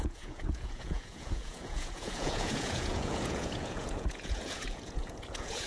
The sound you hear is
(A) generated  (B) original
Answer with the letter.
A